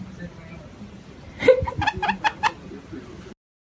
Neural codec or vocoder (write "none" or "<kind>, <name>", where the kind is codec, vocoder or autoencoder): none